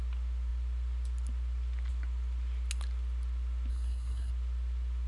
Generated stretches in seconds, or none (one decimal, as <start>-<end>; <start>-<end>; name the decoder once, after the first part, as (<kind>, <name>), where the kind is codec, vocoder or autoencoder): 3.7-4.3 (codec, SNAC)

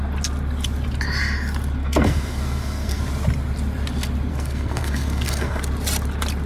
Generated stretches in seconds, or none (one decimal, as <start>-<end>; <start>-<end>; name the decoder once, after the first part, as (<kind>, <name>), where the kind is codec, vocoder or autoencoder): 1.8-3.0 (codec, SNAC); 4.3-5.6

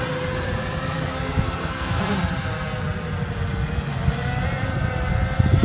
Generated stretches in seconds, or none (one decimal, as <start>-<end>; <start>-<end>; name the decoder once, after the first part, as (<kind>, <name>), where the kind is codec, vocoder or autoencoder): 1.0-2.0 (codec, SNAC)

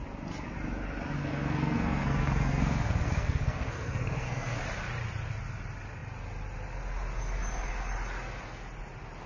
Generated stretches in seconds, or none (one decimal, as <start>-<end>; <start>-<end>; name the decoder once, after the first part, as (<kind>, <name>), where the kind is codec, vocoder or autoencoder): 1.2-4.6 (codec, SNAC)

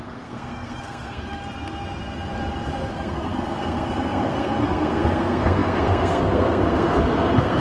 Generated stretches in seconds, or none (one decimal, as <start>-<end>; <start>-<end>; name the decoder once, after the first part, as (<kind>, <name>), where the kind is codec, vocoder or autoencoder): 0.0-1.4 (codec, SNAC); 2.9-7.6

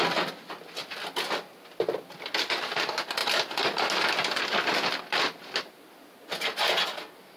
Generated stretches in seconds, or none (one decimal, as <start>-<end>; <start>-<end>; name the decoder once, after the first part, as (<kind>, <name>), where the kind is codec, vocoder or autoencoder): none

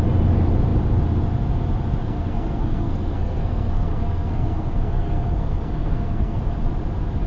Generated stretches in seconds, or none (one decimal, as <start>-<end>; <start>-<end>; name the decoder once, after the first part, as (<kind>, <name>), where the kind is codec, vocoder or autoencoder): 2.0-6.4 (codec, SNAC)